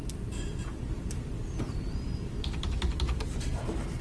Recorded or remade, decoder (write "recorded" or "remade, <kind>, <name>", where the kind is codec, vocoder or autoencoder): recorded